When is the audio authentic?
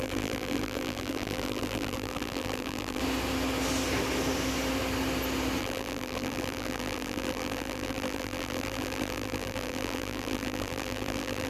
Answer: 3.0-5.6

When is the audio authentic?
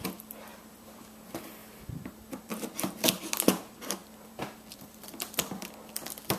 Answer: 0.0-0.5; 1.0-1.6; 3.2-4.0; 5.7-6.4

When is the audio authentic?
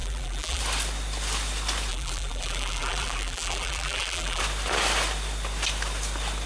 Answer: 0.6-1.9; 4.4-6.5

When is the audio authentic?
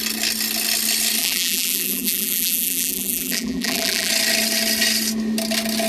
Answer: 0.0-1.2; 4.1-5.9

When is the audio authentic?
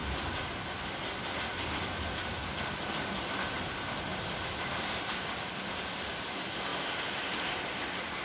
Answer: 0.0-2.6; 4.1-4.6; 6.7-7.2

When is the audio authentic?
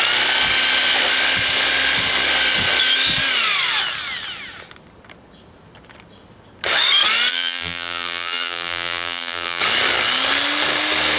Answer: 0.0-7.3; 9.6-11.2